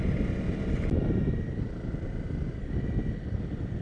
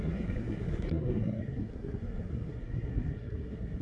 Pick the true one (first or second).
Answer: first